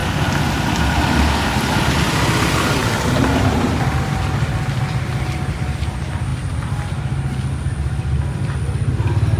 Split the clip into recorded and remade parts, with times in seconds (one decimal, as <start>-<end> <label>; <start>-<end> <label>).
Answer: 0.0-9.4 recorded

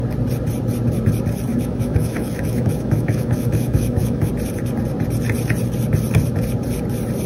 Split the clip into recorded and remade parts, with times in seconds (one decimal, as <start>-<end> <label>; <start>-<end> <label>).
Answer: 0.0-1.5 recorded; 1.5-4.3 remade; 4.3-7.3 recorded

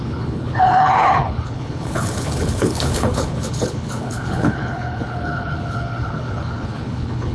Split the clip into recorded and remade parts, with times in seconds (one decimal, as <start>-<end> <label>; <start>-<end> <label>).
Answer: 0.0-7.3 remade

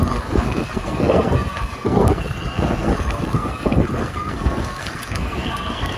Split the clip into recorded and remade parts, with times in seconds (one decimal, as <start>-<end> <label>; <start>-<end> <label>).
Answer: 0.0-6.0 remade

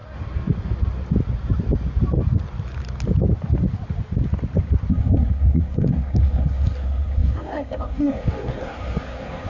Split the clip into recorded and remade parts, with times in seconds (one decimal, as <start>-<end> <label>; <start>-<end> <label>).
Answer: 0.0-4.9 recorded; 4.9-9.5 remade

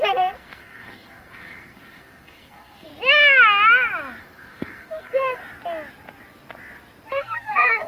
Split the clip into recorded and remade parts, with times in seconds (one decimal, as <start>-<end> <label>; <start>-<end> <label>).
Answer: 0.0-2.9 remade; 2.9-4.2 recorded; 4.2-5.4 remade; 5.4-7.1 recorded; 7.1-7.9 remade

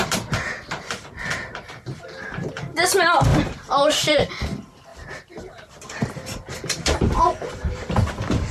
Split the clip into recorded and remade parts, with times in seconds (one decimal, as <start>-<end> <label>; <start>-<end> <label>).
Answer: 0.0-1.3 recorded; 1.3-2.6 remade; 2.6-3.3 recorded; 3.3-4.3 remade; 4.3-4.9 recorded; 4.9-8.1 remade; 8.1-8.5 recorded

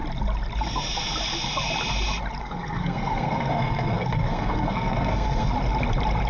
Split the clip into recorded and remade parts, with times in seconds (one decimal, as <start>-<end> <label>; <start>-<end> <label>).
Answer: 0.0-2.4 recorded; 2.4-5.5 remade; 5.5-6.3 recorded